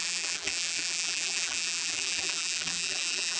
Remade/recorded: remade